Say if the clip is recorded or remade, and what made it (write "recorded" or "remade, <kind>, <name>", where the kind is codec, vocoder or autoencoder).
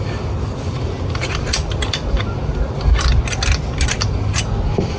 recorded